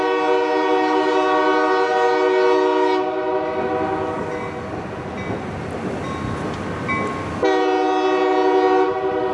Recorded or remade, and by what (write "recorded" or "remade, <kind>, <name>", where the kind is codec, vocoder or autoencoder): recorded